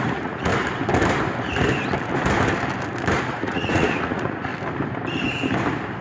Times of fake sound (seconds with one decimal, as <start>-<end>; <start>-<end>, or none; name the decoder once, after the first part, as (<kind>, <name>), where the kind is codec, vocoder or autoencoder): 0.0-0.5 (vocoder, Vocos); 3.2-4.5

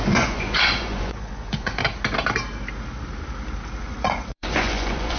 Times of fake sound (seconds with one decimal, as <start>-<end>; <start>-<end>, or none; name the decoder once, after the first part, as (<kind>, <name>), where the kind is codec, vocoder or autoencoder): 0.0-1.8 (vocoder, Vocos); 3.8-5.2

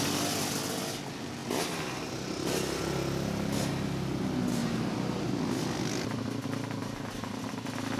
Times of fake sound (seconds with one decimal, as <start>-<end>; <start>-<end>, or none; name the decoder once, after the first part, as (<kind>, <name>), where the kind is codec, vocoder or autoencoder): 4.6-5.3 (vocoder, BigVGAN v2)

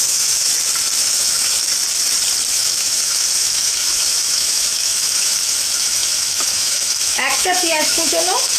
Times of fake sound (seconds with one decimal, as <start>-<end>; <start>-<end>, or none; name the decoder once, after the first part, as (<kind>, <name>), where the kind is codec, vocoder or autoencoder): 0.0-0.5 (autoencoder, DAC-VAE); 1.0-1.7; 2.5-8.6